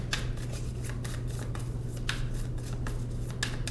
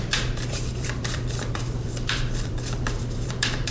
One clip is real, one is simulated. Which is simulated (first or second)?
second